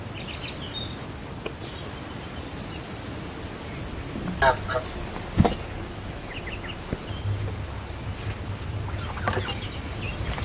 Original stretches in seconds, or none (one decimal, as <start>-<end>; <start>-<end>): 0.0-10.4